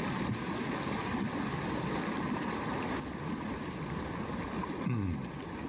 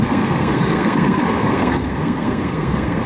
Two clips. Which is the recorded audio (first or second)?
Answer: first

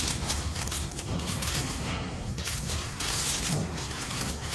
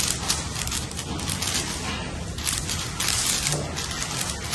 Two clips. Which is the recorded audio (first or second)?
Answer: second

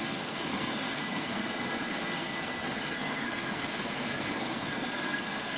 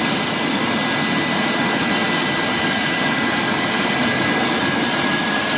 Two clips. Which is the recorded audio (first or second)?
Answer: second